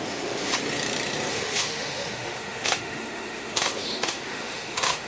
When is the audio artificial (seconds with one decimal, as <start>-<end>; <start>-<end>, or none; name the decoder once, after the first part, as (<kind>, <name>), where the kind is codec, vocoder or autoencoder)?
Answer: 0.0-0.5 (autoencoder, DAC-VAE); 1.3-5.1